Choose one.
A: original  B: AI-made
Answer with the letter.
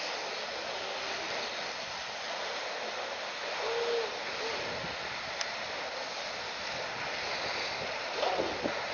A